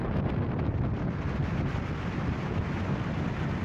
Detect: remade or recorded recorded